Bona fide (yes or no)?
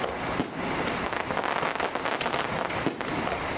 yes